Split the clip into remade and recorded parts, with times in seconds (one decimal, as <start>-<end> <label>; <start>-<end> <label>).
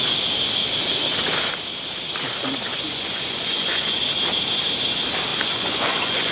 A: 0.0-2.7 recorded; 2.7-4.0 remade; 4.0-5.3 recorded; 5.3-6.3 remade